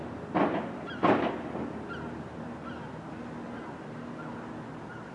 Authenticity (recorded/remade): recorded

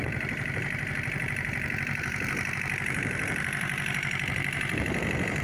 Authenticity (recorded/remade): remade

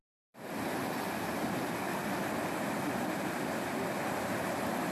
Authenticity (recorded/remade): recorded